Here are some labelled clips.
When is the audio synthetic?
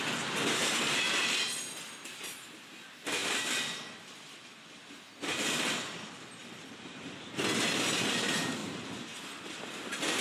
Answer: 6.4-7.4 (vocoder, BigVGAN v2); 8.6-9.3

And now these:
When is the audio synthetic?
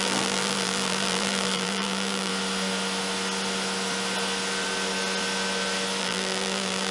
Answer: 0.0-2.3 (vocoder, BigVGAN v2); 6.0-6.9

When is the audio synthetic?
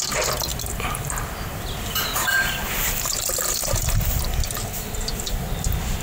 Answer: 0.5-4.1 (vocoder, BigVGAN v2)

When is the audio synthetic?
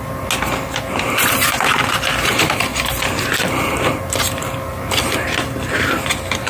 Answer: 2.7-4.4 (vocoder, BigVGAN v2)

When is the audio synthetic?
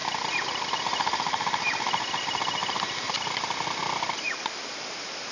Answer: 0.0-5.3 (vocoder, BigVGAN v2)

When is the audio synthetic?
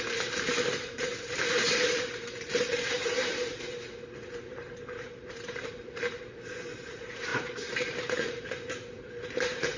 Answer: 0.0-3.4 (vocoder, BigVGAN v2); 4.3-9.8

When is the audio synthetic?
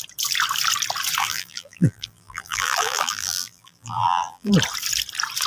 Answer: 1.2-4.5 (vocoder, BigVGAN v2)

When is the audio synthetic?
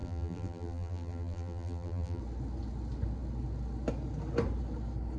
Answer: 0.0-2.2 (vocoder, BigVGAN v2)